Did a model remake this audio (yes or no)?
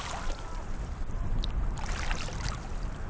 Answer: yes